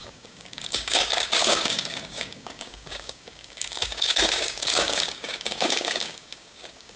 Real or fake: fake